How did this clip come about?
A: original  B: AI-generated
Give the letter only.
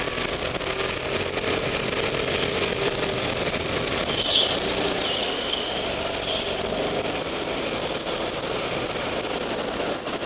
A